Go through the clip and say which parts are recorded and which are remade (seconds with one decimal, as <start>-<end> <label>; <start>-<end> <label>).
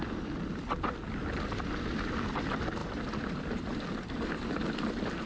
0.0-5.3 recorded